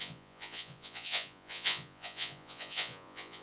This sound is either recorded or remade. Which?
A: remade